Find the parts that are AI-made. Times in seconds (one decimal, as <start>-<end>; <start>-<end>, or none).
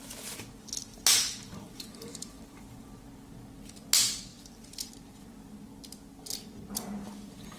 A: 0.9-3.1; 4.3-4.9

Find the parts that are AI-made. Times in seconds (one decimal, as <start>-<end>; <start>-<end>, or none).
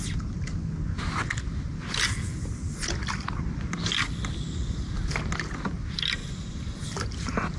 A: 6.2-6.9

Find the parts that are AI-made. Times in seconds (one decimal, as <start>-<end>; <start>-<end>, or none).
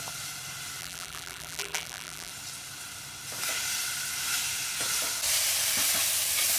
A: 0.8-2.3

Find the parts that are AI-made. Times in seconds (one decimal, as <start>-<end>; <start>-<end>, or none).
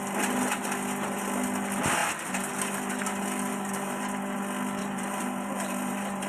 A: 3.5-4.0; 4.8-6.3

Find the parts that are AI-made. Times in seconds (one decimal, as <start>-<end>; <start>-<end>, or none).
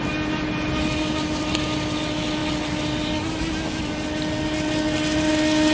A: none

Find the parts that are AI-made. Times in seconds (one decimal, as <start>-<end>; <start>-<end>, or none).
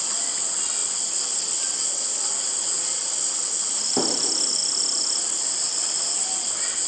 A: 4.6-6.5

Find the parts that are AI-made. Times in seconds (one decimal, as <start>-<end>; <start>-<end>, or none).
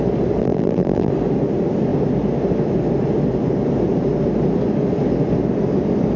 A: 0.4-1.1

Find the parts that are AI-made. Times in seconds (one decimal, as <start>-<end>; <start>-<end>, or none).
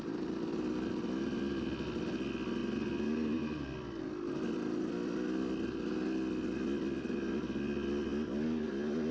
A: 2.6-4.0